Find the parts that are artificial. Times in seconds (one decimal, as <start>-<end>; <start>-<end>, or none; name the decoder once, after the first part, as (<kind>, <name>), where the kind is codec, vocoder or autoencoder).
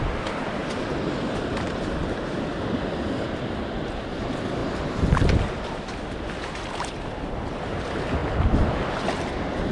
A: 0.0-0.6 (vocoder, BigVGAN v2); 1.5-4.6; 6.3-8.2; 8.7-9.7